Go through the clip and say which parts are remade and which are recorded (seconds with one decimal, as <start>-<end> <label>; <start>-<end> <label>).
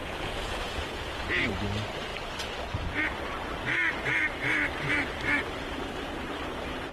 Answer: 0.0-1.5 remade; 1.5-6.9 recorded